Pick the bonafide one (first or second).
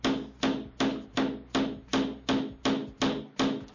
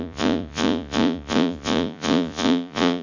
first